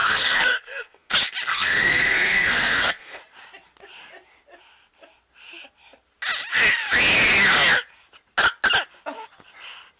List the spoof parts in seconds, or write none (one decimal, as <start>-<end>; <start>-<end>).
0.0-1.1; 1.5-3.2